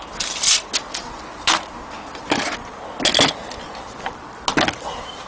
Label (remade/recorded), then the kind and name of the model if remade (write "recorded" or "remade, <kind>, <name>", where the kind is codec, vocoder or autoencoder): recorded